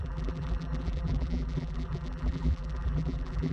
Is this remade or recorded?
remade